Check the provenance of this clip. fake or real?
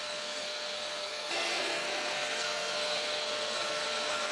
fake